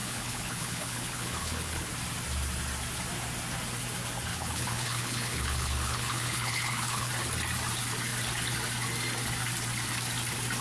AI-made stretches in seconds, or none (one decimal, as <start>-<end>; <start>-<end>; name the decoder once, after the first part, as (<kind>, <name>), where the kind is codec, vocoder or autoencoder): 0.0-1.9 (codec, HILCodec); 4.3-7.1